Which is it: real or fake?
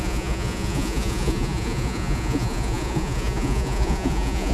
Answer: fake